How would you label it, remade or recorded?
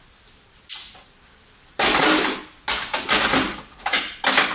recorded